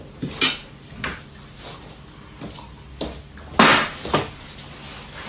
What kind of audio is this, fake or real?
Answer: real